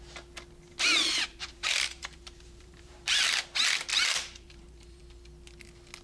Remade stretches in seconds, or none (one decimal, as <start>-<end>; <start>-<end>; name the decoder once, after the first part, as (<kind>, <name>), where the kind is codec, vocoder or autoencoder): 1.3-3.3 (vocoder, BigVGAN v2); 3.9-5.0